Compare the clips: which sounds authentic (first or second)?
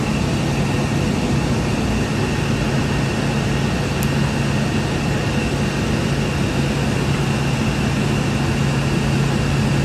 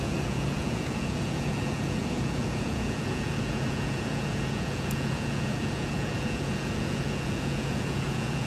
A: first